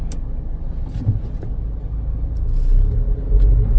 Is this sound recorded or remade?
recorded